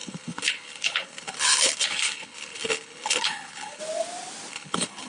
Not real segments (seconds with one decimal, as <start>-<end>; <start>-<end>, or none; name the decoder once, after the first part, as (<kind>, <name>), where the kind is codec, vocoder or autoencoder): 0.0-3.8 (codec, HILCodec); 4.5-5.1